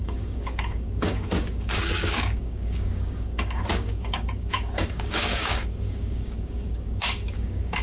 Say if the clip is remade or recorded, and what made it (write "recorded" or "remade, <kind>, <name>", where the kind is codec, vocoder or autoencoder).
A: remade, codec, DAC